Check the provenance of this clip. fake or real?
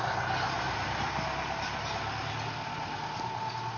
real